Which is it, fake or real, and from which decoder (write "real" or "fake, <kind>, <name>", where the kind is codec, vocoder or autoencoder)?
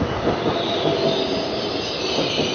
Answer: real